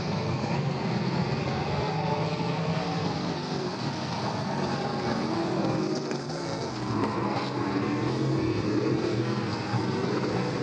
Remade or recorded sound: remade